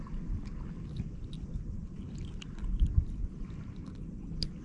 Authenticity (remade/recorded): recorded